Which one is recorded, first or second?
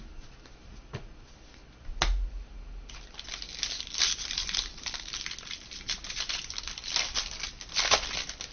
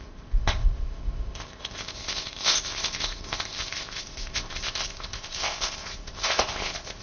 first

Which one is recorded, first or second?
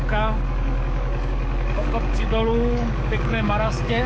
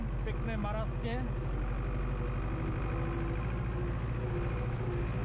second